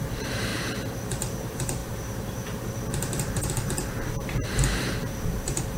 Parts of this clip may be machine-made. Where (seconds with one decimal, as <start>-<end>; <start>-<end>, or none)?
0.0-0.5; 1.0-5.8